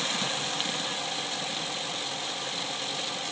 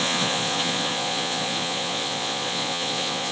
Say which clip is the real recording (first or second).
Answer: first